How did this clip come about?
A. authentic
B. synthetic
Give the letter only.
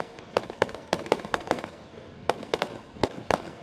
B